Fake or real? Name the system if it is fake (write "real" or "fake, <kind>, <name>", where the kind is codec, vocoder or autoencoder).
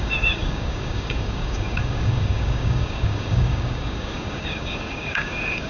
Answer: fake, codec, DAC